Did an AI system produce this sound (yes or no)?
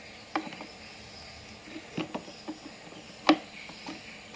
no